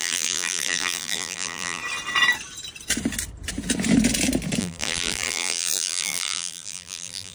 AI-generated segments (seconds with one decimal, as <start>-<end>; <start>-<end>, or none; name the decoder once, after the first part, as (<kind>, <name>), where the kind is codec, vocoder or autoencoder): 0.0-1.8 (vocoder, BigVGAN v2); 4.6-7.3